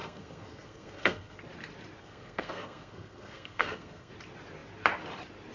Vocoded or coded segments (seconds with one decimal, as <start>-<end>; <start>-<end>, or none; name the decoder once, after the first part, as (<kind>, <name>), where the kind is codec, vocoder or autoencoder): 0.0-1.4 (codec, SNAC); 2.0-4.1